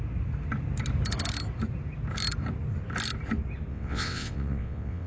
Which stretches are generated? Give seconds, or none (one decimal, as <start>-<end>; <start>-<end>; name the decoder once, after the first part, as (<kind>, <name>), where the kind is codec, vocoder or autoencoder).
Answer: 3.7-5.1 (vocoder, WaveNeXt)